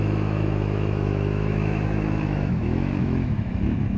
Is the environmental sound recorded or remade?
remade